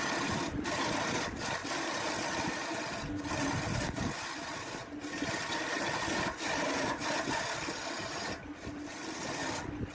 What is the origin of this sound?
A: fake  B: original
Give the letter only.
B